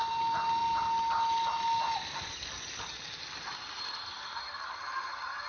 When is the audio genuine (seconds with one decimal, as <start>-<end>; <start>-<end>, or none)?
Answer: 0.0-5.5